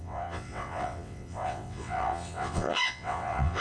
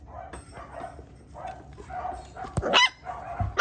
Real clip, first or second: second